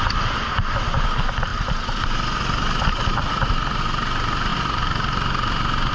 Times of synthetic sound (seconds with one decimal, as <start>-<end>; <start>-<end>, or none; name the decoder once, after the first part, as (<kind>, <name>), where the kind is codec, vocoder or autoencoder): 1.5-3.8 (vocoder, BigVGAN v2)

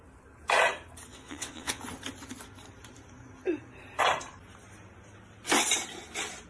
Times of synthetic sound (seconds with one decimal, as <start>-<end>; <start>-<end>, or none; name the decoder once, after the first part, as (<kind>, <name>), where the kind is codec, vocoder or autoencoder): 1.1-1.8 (vocoder, WaveNeXt)